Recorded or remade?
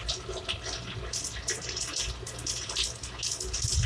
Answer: recorded